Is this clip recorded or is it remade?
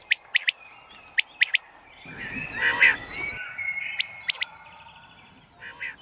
recorded